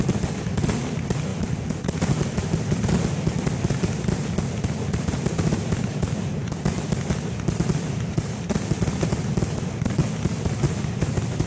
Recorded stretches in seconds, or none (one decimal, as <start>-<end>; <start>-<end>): 0.0-11.5